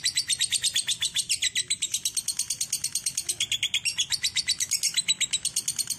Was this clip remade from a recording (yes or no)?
no